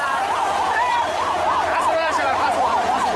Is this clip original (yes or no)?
no